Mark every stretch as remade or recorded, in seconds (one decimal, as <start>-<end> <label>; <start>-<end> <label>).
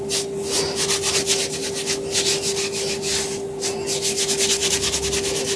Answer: 0.0-5.6 recorded